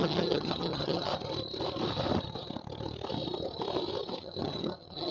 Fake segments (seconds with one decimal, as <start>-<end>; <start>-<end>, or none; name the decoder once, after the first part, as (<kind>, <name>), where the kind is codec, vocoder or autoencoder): 0.0-1.1 (vocoder, HiFi-GAN); 4.2-5.1